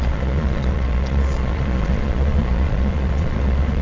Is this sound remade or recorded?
remade